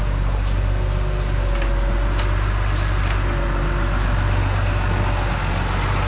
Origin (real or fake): real